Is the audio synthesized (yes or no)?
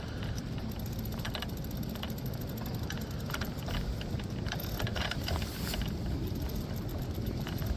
yes